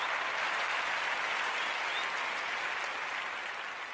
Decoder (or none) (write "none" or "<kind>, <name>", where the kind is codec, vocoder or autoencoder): none